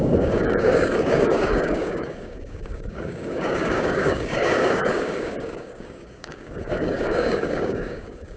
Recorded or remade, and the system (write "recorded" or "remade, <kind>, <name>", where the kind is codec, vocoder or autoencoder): remade, codec, DAC